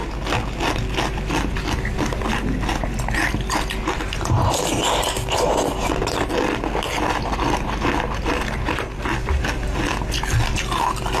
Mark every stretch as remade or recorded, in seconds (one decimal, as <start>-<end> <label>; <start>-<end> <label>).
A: 0.0-11.2 recorded